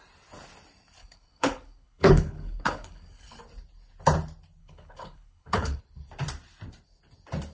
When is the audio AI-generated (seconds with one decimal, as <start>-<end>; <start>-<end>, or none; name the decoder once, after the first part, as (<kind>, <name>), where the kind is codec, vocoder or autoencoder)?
1.0-3.4 (codec, HILCodec); 4.6-5.8